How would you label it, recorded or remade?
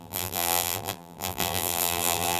remade